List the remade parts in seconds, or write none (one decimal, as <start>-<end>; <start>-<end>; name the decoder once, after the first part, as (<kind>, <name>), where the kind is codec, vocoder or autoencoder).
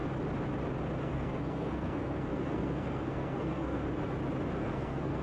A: 1.0-3.8 (codec, SNAC); 4.6-5.2